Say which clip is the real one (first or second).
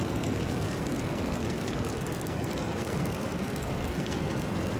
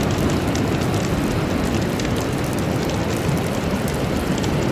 second